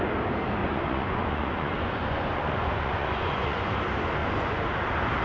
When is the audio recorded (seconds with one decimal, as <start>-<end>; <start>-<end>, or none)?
0.0-0.6; 3.7-4.2; 4.7-5.2